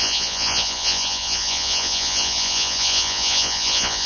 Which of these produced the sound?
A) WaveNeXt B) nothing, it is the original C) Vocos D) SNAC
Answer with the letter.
C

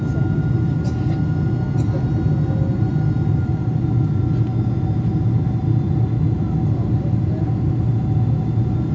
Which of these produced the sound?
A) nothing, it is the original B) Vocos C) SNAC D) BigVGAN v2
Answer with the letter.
A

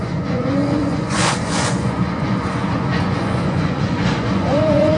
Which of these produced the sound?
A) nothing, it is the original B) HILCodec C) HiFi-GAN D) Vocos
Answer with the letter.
D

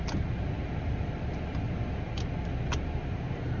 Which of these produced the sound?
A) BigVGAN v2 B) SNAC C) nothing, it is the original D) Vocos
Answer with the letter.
C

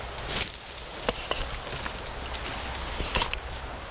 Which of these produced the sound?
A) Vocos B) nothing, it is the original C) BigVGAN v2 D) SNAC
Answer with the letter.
B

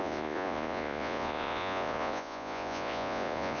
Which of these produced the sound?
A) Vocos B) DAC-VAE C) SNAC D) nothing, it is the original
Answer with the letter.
A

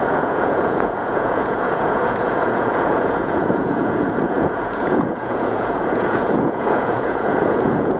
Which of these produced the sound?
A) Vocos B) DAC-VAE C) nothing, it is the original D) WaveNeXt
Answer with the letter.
A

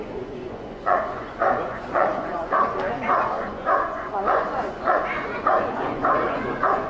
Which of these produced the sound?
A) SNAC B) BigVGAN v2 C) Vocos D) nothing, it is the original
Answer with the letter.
C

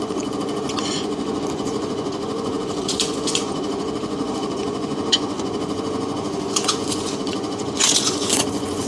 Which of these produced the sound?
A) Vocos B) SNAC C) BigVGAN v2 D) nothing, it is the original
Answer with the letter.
A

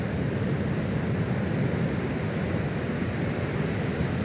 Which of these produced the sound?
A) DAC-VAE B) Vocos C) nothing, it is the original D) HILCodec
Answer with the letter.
C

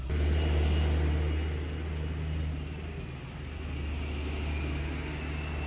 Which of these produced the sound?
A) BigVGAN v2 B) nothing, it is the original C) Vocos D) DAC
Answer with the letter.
B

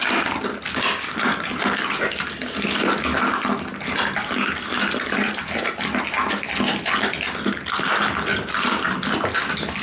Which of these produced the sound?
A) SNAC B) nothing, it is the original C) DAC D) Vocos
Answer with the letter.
B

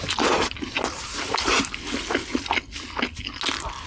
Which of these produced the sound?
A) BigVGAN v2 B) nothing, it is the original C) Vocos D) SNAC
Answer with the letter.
B